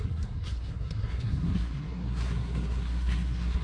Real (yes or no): no